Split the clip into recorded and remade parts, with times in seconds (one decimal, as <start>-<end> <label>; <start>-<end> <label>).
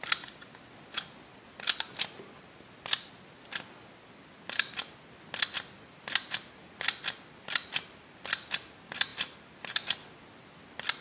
0.0-11.0 recorded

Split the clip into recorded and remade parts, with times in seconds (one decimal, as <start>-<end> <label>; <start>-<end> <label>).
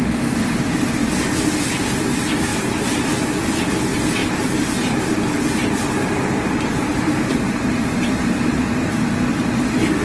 0.0-2.5 recorded; 2.5-3.7 remade; 3.7-10.0 recorded